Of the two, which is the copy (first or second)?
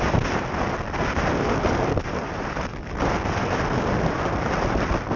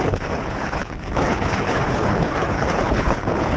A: second